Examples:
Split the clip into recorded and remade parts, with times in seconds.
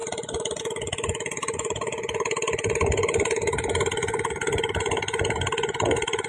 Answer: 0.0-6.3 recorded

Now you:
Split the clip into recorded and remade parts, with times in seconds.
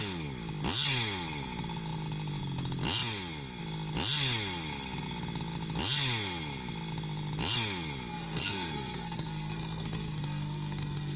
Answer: 0.0-8.1 recorded; 8.1-11.2 remade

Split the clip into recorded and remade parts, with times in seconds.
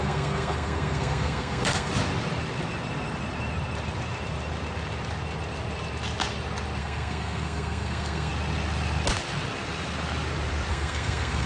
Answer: 0.0-1.9 remade; 1.9-6.8 recorded; 6.8-8.3 remade; 8.3-10.7 recorded; 10.7-11.5 remade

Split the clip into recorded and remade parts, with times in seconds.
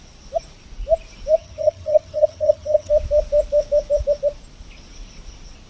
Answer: 0.0-1.4 recorded; 1.4-2.9 remade; 2.9-5.7 recorded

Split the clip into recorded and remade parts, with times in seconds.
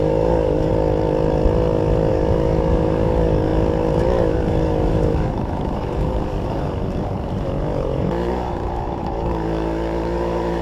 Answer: 0.0-0.7 remade; 0.7-2.1 recorded; 2.1-10.6 remade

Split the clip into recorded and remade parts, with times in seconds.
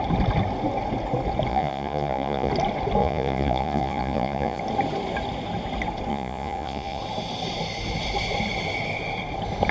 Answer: 0.0-1.5 recorded; 1.5-2.5 remade; 2.5-3.0 recorded; 3.0-4.6 remade; 4.6-6.1 recorded; 6.1-7.0 remade; 7.0-9.7 recorded